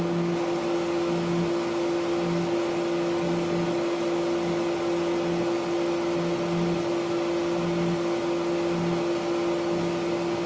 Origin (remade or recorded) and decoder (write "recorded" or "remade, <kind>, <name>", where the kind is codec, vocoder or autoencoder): recorded